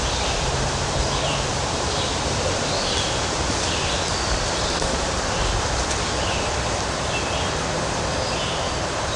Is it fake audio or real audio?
fake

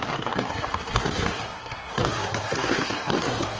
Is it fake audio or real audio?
fake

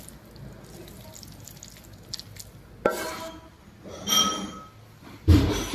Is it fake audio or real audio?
real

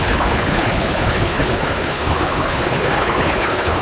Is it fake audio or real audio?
fake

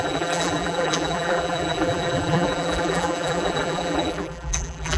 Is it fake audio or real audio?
fake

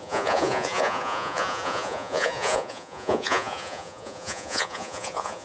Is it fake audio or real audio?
fake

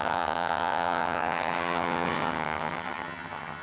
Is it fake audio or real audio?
fake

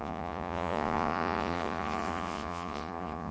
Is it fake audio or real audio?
fake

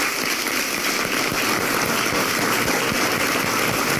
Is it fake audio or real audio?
real